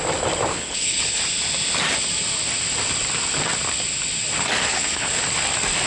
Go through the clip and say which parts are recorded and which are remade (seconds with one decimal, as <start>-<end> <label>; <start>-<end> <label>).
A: 0.0-0.5 recorded; 0.5-1.2 remade; 1.2-4.7 recorded; 4.7-5.2 remade; 5.2-5.9 recorded